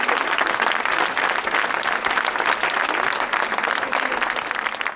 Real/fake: real